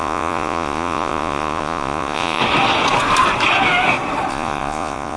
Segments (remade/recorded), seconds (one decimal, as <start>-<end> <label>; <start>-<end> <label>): 0.0-2.4 remade; 2.4-4.3 recorded; 4.3-5.2 remade